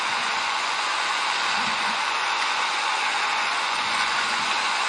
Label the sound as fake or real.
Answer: fake